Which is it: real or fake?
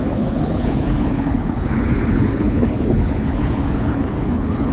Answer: fake